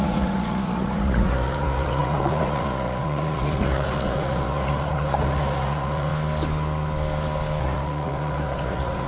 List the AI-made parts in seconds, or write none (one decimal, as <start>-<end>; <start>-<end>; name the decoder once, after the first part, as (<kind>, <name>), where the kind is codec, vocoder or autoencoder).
0.0-6.1 (vocoder, Vocos); 7.6-9.1